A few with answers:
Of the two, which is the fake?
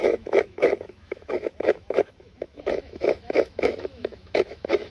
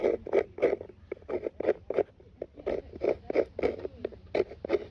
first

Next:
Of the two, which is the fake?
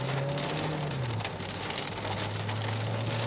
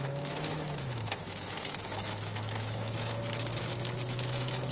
second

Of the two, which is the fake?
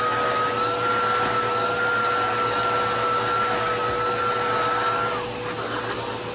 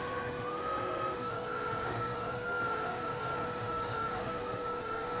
second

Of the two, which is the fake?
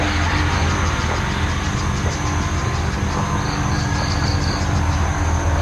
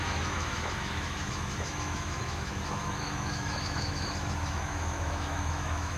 second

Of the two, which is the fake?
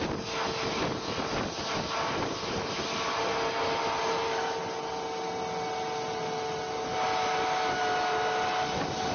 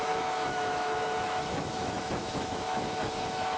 second